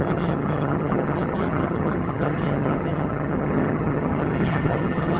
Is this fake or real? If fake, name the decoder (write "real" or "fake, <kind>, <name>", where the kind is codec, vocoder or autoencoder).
fake, vocoder, HiFi-GAN